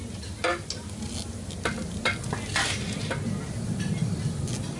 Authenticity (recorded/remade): recorded